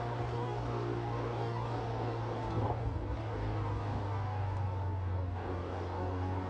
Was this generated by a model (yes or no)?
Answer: yes